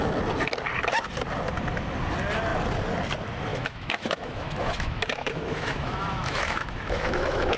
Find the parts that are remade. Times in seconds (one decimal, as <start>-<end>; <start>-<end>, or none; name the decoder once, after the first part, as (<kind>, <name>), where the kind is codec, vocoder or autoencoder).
3.5-7.6 (autoencoder, DAC-VAE)

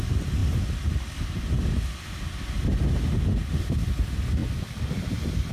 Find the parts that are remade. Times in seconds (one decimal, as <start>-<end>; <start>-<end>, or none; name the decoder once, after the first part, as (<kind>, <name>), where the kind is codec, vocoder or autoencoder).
none

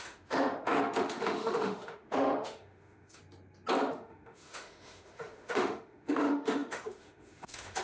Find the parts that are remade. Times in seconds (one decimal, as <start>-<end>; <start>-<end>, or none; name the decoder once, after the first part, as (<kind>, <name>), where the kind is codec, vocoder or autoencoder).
0.0-3.2 (autoencoder, DAC-VAE); 3.9-7.8

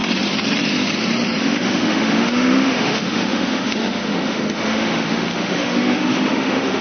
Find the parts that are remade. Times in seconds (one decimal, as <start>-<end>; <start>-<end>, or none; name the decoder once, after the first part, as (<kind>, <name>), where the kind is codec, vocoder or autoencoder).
1.4-6.8 (autoencoder, DAC-VAE)

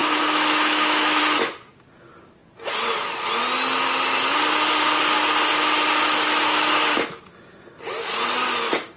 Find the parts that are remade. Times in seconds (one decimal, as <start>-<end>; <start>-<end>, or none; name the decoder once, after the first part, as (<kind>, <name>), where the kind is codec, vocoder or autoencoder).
0.0-1.2 (autoencoder, DAC-VAE)

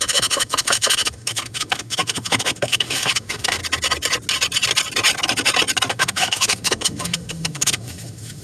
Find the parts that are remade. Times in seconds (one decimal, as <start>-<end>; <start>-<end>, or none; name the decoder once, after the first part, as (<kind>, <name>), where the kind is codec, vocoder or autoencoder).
0.0-3.6 (autoencoder, DAC-VAE); 5.9-8.4